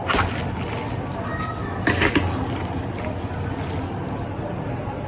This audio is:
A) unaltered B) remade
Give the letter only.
A